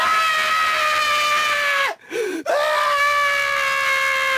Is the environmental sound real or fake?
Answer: real